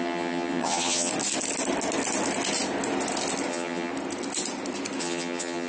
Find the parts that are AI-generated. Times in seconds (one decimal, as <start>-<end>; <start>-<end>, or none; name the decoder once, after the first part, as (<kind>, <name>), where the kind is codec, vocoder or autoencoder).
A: 0.0-1.1 (vocoder, HiFi-GAN); 3.5-3.9; 5.0-5.7